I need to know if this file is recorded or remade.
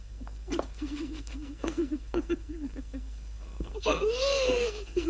remade